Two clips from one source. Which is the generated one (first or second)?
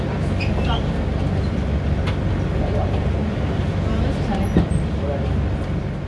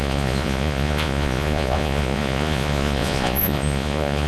second